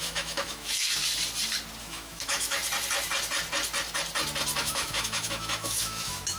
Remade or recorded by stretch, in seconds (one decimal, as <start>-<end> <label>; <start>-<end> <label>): 0.0-1.0 remade; 1.0-1.8 recorded; 1.8-2.6 remade; 2.6-4.6 recorded; 4.6-6.4 remade